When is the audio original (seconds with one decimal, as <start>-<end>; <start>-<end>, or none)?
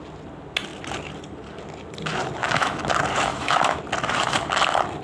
0.0-2.4; 2.9-3.3; 3.8-5.0